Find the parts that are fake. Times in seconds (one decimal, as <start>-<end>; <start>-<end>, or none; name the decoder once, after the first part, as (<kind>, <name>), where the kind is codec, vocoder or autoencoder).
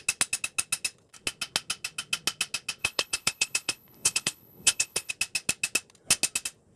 2.8-5.1 (codec, HILCodec)